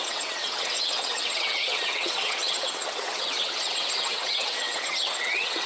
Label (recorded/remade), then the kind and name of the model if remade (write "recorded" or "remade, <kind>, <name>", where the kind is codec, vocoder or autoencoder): remade, vocoder, WaveNeXt